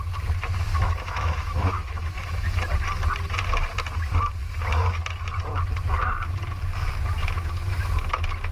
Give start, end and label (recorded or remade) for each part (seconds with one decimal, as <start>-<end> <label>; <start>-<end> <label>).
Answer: 0.0-0.7 recorded; 0.7-2.6 remade; 2.6-8.5 recorded